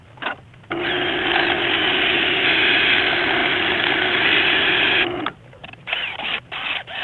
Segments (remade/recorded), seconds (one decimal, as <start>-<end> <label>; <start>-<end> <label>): 0.0-3.4 recorded; 3.4-3.9 remade; 3.9-5.6 recorded; 5.6-7.0 remade